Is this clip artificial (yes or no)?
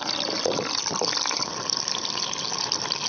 no